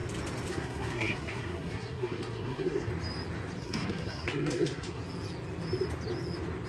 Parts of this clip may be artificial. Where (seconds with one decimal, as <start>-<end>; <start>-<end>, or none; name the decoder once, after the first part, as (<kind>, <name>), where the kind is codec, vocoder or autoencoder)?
0.5-2.9 (codec, SNAC); 3.6-5.0